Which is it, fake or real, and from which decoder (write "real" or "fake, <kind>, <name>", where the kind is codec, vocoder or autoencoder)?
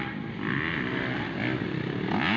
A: real